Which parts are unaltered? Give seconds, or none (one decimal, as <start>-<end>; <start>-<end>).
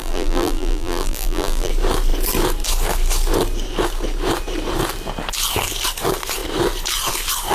1.7-7.5